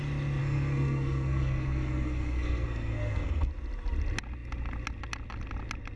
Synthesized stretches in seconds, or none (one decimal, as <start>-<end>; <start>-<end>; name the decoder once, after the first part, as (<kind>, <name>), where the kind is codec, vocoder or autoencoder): 0.4-3.5 (codec, SNAC)